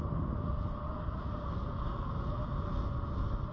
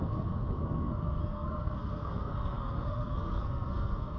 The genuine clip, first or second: first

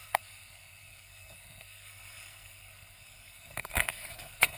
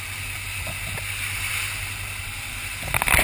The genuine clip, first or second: second